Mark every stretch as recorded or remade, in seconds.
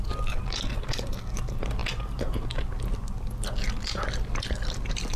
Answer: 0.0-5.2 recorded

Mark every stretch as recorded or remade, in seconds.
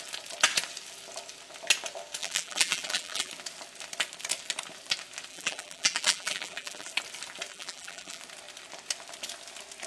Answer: 0.0-2.2 recorded; 2.2-3.3 remade; 3.3-5.3 recorded; 5.3-6.9 remade; 6.9-7.5 recorded; 7.5-8.2 remade; 8.2-9.9 recorded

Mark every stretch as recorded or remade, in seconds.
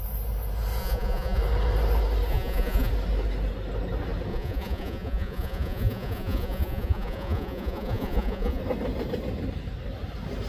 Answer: 0.0-0.8 recorded; 0.8-1.4 remade; 1.4-2.3 recorded; 2.3-2.9 remade; 2.9-4.3 recorded; 4.3-8.6 remade; 8.6-10.5 recorded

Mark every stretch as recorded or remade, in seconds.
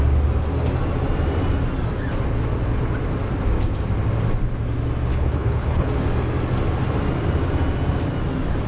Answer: 0.0-5.1 recorded; 5.1-5.9 remade; 5.9-8.7 recorded